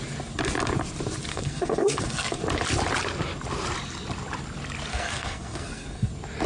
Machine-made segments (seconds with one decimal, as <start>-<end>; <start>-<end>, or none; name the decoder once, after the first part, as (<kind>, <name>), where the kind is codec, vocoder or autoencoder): 1.3-2.4 (codec, SNAC); 4.9-6.1